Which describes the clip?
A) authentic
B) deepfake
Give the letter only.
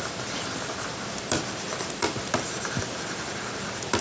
A